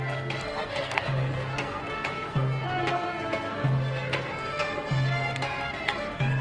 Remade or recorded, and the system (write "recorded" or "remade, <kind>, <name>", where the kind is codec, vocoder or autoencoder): remade, codec, SNAC